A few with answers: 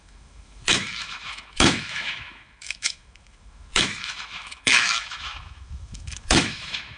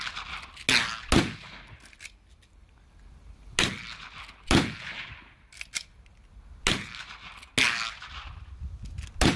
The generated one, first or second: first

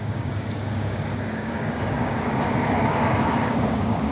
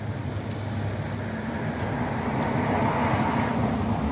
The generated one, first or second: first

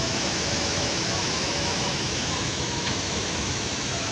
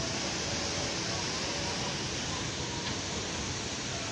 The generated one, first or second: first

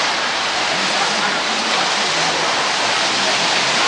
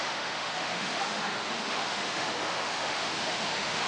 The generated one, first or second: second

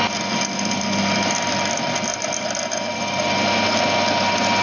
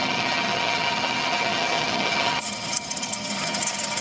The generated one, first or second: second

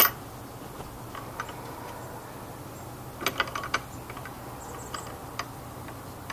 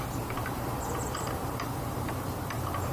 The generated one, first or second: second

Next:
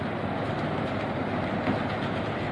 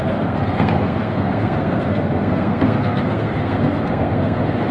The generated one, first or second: second